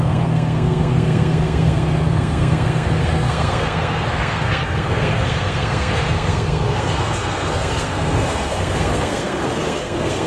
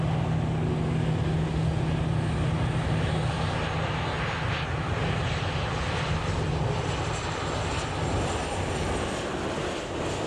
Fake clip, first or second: first